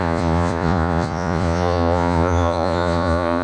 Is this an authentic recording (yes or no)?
no